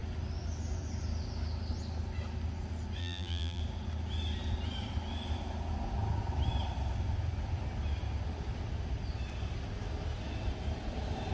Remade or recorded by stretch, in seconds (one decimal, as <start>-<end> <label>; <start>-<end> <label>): 0.0-3.0 recorded; 3.0-3.6 remade; 3.6-11.3 recorded